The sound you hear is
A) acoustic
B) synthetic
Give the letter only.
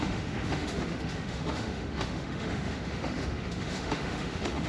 B